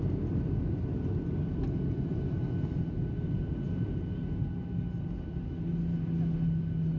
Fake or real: real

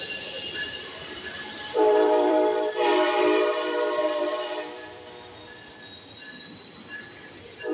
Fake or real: fake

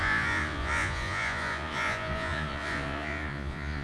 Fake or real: fake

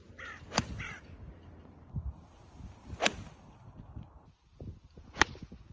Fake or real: real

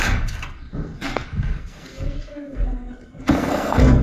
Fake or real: fake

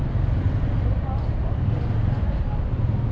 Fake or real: real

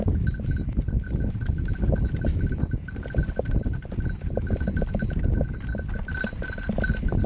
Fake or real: real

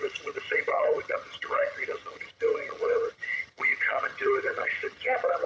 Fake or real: fake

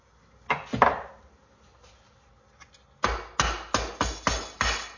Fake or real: real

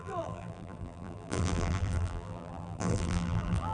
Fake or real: fake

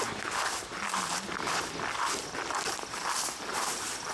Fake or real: real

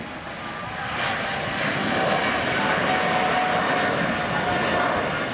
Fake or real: real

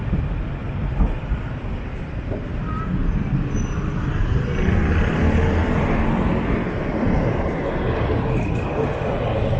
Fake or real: real